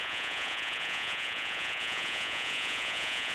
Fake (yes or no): yes